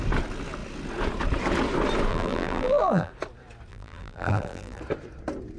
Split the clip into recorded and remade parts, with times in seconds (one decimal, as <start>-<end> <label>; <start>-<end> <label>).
0.0-2.1 recorded; 2.1-3.1 remade; 3.1-3.7 recorded; 3.7-4.8 remade; 4.8-5.6 recorded